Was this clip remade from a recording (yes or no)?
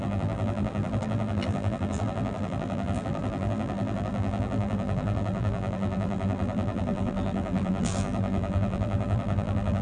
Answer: yes